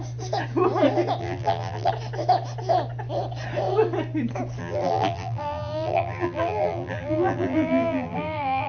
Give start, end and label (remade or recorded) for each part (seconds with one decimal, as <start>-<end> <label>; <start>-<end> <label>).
0.0-1.2 recorded; 1.2-1.9 remade; 1.9-4.6 recorded; 4.6-8.7 remade